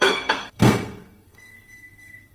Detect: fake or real fake